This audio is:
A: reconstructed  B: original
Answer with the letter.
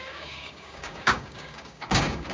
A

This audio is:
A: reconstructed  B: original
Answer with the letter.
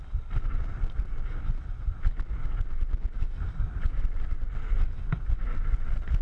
B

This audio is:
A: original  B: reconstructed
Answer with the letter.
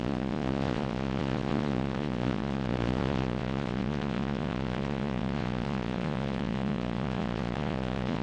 B